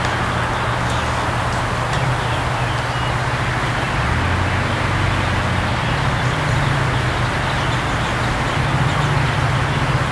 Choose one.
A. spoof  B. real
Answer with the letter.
B